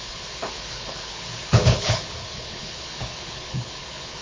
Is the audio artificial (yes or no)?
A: yes